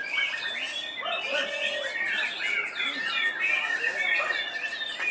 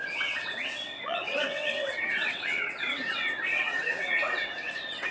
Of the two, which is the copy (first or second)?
second